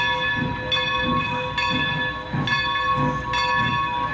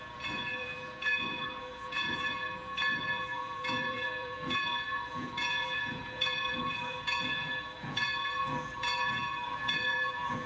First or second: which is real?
first